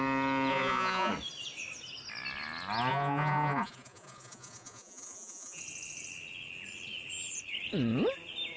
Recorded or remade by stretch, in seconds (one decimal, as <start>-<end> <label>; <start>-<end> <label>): 0.0-0.5 recorded; 0.5-1.1 remade; 1.1-2.9 recorded; 2.9-5.6 remade; 5.6-8.6 recorded